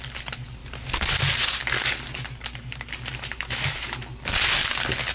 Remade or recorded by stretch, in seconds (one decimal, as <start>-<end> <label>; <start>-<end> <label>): 0.0-0.6 remade; 0.6-1.1 recorded; 1.1-1.6 remade; 1.6-5.1 recorded